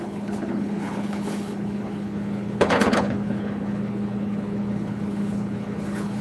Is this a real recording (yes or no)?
no